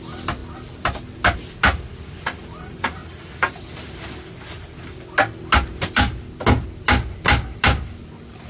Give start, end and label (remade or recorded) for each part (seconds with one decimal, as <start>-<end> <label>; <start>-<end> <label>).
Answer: 0.0-8.5 recorded